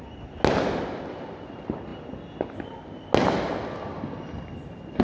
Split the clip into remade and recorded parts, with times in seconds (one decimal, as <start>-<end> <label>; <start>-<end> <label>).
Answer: 0.0-5.0 recorded